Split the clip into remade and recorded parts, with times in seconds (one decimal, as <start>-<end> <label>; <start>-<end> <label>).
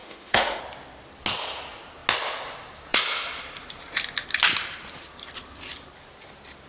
0.0-0.6 remade; 0.6-6.7 recorded